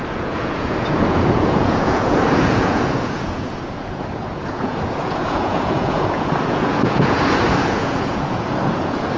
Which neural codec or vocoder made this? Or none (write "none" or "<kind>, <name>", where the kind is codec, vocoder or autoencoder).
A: vocoder, Vocos